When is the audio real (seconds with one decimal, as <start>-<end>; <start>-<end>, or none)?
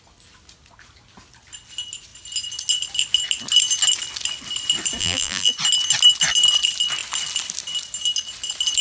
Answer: 0.0-5.0; 5.5-8.8